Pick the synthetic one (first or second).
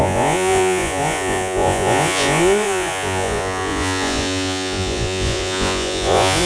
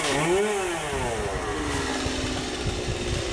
first